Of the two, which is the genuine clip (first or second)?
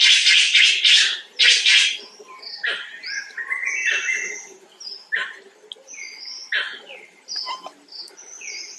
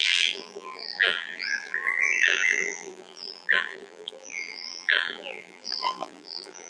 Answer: first